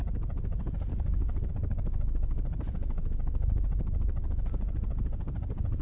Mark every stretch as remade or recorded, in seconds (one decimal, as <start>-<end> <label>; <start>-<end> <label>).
0.0-0.9 recorded; 0.9-1.5 remade; 1.5-5.8 recorded